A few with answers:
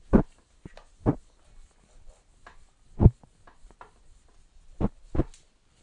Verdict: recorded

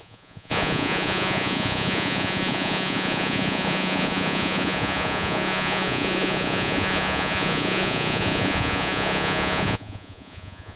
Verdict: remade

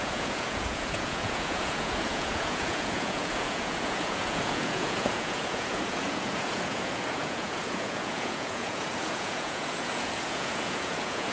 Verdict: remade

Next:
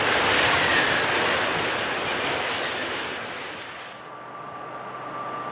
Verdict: recorded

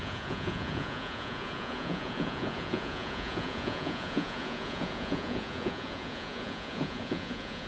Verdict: remade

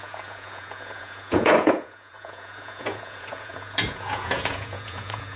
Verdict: remade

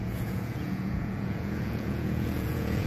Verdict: remade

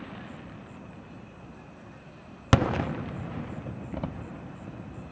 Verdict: recorded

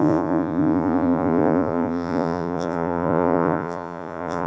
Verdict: remade